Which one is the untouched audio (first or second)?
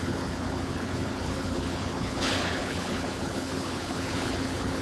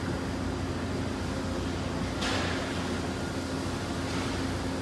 second